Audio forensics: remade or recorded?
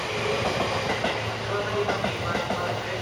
recorded